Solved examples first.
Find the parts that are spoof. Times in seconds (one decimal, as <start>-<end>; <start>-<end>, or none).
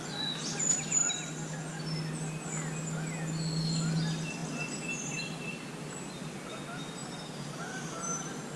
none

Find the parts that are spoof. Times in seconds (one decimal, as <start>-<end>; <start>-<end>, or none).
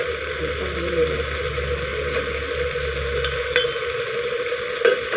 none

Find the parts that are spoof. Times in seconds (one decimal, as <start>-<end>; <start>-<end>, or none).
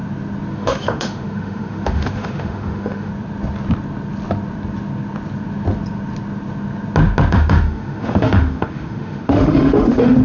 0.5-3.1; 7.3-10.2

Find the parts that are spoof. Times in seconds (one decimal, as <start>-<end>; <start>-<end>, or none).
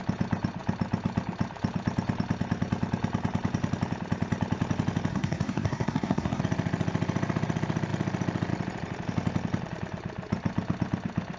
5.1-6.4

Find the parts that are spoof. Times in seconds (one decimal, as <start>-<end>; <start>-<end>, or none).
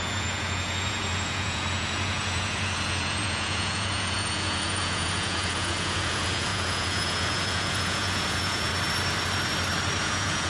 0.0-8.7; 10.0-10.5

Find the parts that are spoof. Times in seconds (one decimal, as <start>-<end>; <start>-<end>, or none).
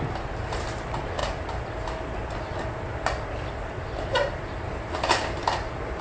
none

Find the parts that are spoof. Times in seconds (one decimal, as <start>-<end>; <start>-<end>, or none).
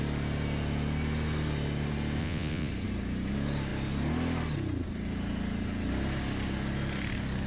2.2-2.7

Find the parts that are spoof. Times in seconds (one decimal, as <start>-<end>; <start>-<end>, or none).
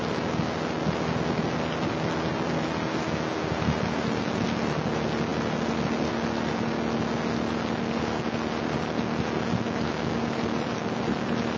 none